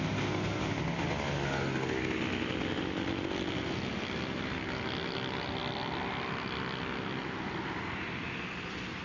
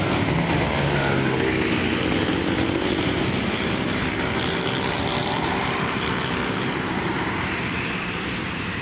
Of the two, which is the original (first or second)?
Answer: first